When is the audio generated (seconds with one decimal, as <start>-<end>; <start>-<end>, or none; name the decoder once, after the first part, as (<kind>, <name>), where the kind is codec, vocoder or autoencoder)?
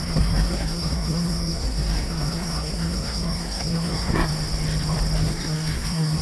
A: 0.0-4.3 (codec, SNAC); 5.2-6.2